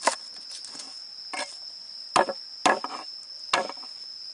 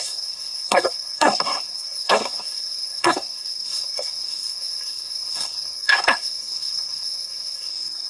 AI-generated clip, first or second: second